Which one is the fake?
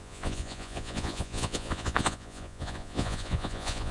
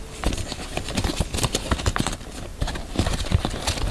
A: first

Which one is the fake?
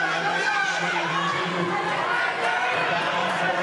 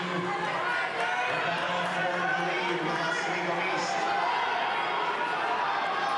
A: first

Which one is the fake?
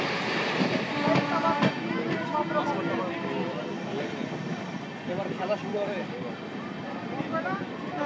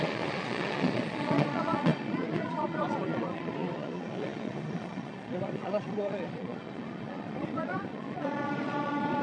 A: second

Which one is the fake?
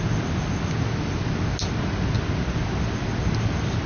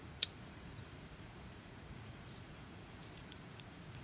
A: second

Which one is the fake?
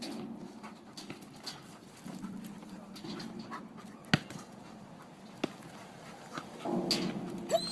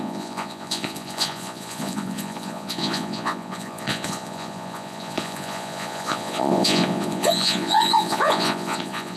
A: second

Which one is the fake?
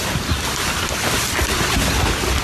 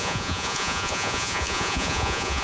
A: second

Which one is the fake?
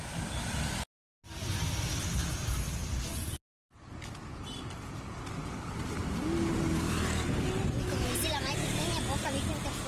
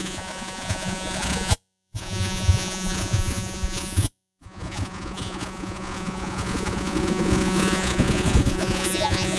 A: second